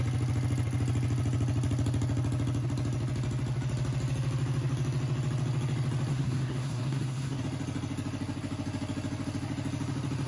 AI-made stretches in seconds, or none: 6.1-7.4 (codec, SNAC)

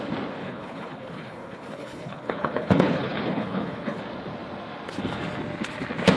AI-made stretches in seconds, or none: 0.4-4.0 (codec, HILCodec)

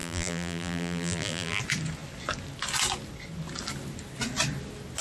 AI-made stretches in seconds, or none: 0.0-1.6 (vocoder, BigVGAN v2)

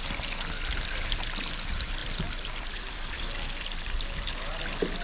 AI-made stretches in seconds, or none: 2.0-3.8 (vocoder, BigVGAN v2)

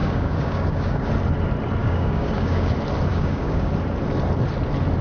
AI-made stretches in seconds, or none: 0.0-1.1 (codec, DAC); 1.8-2.7; 3.1-3.7